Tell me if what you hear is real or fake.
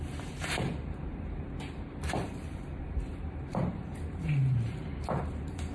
fake